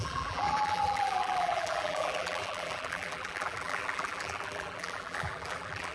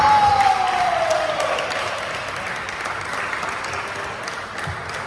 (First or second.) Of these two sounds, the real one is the second